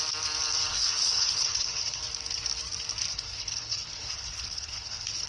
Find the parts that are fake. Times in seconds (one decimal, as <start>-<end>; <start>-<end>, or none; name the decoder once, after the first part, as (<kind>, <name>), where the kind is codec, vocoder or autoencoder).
0.7-2.0 (codec, HILCodec); 3.1-5.3